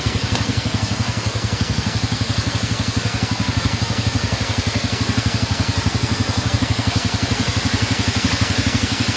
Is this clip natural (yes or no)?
no